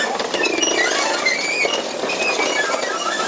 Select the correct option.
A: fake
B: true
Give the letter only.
B